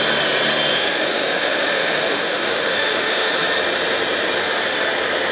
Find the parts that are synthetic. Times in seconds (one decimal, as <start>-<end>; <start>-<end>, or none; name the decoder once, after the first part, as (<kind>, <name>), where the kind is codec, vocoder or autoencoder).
0.7-3.3 (autoencoder, DAC-VAE)